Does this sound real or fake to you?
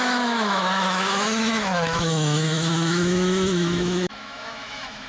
fake